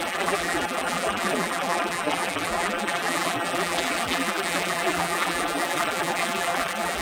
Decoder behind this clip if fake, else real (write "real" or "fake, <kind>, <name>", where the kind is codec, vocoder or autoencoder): fake, vocoder, BigVGAN v2